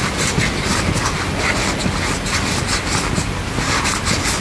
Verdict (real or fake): real